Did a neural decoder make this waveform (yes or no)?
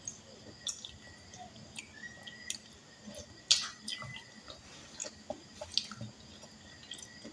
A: no